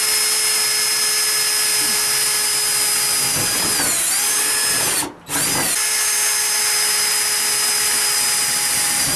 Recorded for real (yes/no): yes